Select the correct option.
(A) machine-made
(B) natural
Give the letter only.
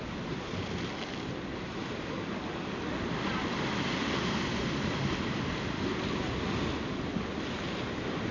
B